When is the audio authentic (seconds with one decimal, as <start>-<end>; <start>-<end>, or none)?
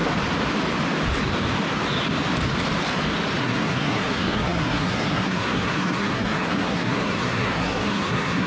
0.0-3.4